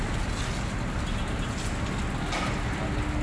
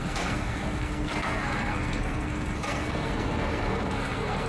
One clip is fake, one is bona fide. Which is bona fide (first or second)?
first